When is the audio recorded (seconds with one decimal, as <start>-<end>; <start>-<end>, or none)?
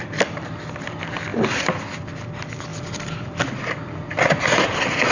0.0-1.3; 2.0-2.7; 3.4-5.1